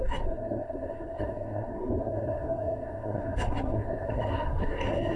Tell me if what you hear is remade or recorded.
remade